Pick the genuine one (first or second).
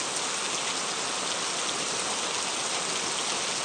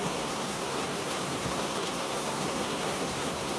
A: first